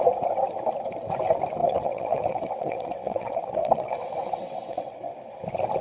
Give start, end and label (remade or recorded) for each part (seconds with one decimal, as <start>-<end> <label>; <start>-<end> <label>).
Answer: 0.0-1.6 recorded; 1.6-5.1 remade; 5.1-5.8 recorded